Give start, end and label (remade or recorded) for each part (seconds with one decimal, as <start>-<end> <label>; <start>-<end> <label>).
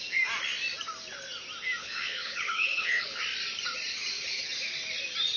0.0-1.8 recorded; 1.8-3.2 remade; 3.2-5.4 recorded